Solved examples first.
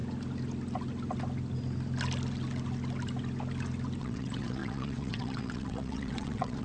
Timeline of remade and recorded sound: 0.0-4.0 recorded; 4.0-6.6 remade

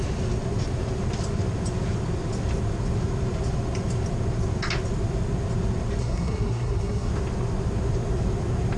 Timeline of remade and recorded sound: 0.0-6.0 recorded; 6.0-7.1 remade; 7.1-8.8 recorded

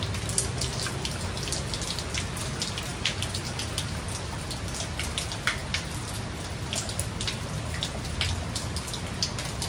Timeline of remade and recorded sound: 0.0-0.7 recorded; 0.7-1.3 remade; 1.3-2.9 recorded; 2.9-4.4 remade; 4.4-5.6 recorded; 5.6-6.7 remade; 6.7-9.7 recorded

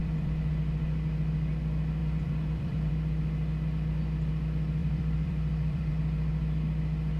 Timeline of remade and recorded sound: 0.0-0.5 remade; 0.5-2.0 recorded; 2.0-2.9 remade; 2.9-4.8 recorded; 4.8-5.9 remade; 5.9-7.2 recorded